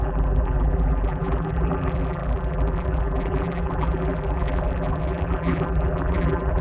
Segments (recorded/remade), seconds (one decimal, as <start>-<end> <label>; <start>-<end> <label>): 0.0-6.6 remade